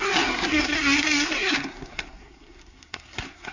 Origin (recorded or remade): remade